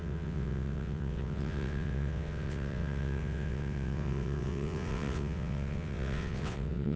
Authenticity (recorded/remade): remade